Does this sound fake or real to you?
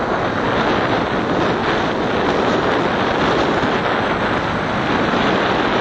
real